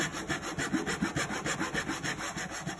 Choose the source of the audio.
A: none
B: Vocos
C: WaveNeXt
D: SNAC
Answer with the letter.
A